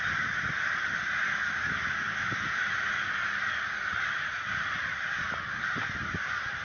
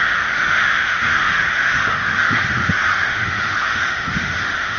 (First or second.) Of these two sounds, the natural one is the first